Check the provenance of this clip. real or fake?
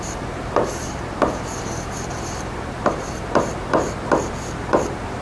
fake